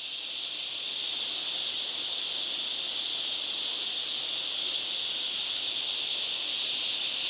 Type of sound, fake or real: real